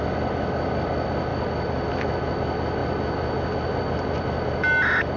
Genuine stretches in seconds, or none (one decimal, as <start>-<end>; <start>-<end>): 0.0-5.2